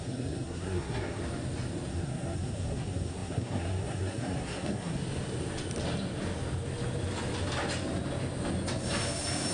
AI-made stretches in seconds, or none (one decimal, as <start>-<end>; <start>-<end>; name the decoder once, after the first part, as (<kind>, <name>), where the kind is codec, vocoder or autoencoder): 0.0-1.2 (codec, SNAC); 1.9-5.0